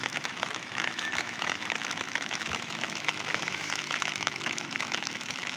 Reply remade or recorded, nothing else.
remade